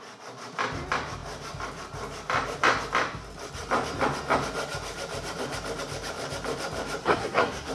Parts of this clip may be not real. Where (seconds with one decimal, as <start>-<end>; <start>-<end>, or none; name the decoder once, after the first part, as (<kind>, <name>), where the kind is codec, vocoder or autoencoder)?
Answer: 7.0-7.7 (codec, SNAC)